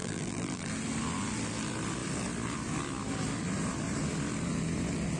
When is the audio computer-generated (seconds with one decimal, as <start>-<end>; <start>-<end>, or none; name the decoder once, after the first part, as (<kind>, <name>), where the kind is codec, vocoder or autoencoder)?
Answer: 0.0-0.7 (vocoder, BigVGAN v2)